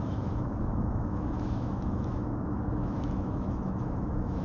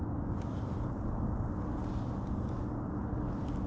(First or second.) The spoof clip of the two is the first